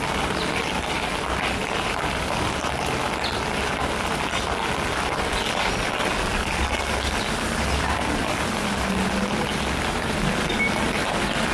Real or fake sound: real